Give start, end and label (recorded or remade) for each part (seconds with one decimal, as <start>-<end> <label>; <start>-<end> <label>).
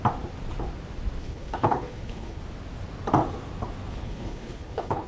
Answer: 0.0-1.2 recorded; 1.2-2.4 remade; 2.4-3.9 recorded; 3.9-5.1 remade